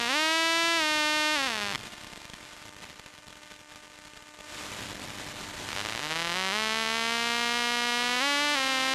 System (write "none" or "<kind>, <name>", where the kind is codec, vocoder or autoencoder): none